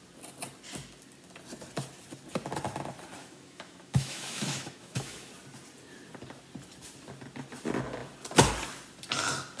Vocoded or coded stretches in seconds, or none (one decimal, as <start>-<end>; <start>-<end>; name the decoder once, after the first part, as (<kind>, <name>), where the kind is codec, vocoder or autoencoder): 3.2-5.3 (autoencoder, DAC-VAE)